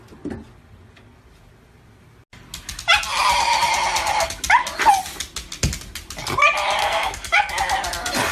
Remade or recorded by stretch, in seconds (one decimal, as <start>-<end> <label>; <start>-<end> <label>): 0.0-6.8 recorded; 6.8-7.5 remade; 7.5-8.3 recorded